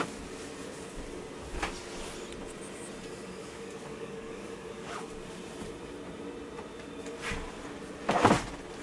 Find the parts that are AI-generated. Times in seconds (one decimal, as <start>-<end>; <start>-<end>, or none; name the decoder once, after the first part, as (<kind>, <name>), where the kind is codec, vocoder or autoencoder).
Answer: 3.4-5.1 (codec, DAC)